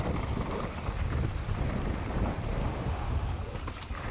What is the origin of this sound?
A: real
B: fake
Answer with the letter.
A